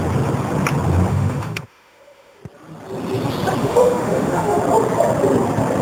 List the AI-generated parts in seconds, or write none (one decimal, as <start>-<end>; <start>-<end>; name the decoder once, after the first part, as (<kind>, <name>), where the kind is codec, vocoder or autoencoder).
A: 1.1-2.4 (autoencoder, DAC-VAE); 3.6-4.6